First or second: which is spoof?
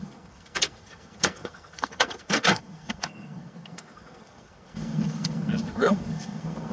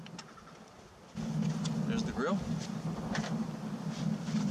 first